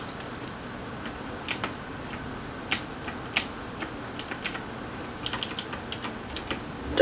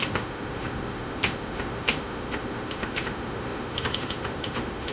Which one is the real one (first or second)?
first